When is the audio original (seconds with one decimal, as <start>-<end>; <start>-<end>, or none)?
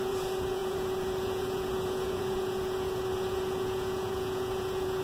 none